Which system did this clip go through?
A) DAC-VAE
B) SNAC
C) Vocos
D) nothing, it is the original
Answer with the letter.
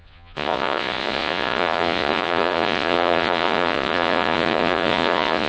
C